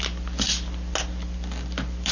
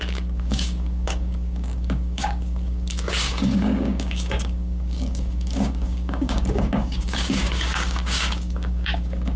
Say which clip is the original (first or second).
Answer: first